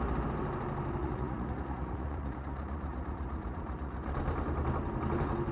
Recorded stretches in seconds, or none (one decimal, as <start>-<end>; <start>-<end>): 0.0-1.0; 4.1-5.5